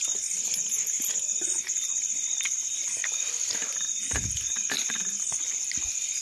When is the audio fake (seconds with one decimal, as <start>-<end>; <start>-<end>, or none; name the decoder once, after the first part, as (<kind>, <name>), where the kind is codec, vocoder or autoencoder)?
none